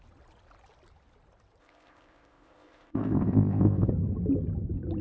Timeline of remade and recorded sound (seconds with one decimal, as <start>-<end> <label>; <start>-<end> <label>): 0.0-1.6 recorded; 1.6-3.9 remade; 3.9-5.0 recorded